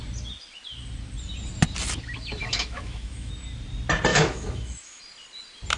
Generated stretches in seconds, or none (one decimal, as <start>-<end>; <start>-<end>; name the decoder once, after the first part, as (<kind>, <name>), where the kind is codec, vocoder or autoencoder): 2.4-3.3 (autoencoder, DAC-VAE); 4.1-5.0